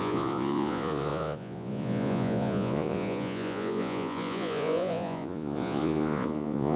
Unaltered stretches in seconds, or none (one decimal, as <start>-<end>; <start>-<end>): none